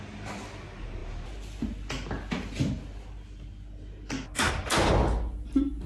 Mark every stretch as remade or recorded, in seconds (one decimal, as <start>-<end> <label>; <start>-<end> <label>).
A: 0.0-5.9 recorded

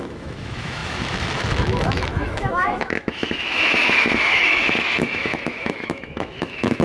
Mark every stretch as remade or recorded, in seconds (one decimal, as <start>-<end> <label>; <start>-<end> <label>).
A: 0.0-6.8 remade